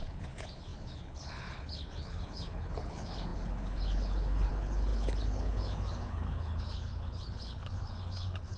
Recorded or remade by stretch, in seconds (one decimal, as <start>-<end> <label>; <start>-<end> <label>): 0.0-8.6 remade